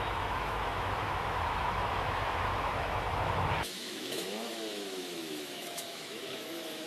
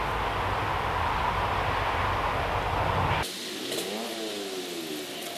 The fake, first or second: first